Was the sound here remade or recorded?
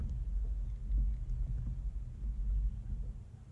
recorded